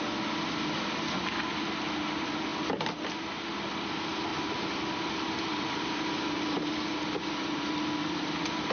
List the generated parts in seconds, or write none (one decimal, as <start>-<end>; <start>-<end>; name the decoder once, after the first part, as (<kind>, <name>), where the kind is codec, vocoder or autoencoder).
2.5-3.1 (vocoder, BigVGAN v2); 4.3-5.1; 5.5-8.7